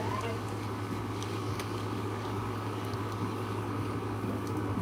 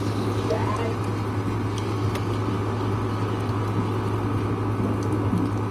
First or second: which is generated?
first